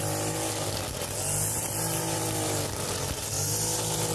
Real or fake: real